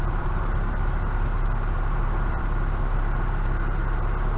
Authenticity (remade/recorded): remade